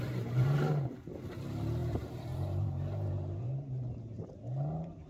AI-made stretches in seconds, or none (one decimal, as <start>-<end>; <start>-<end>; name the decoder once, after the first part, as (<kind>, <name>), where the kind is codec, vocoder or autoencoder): 0.0-5.1 (vocoder, BigVGAN v2)